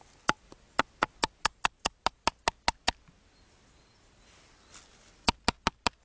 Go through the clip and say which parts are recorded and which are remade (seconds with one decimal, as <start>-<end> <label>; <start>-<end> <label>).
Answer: 0.0-6.0 recorded